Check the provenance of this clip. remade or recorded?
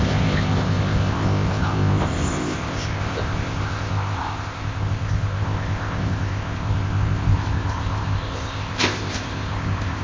remade